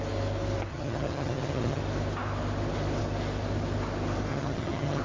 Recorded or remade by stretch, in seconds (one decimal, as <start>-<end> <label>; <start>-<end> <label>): 0.0-0.7 recorded; 0.7-1.8 remade; 1.8-4.3 recorded; 4.3-5.0 remade